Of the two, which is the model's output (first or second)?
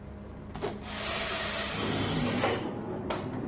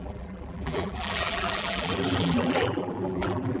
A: second